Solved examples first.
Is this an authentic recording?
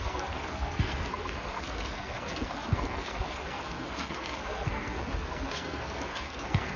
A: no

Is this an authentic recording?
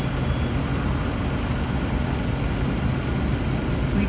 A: yes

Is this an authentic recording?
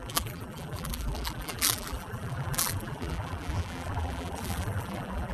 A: no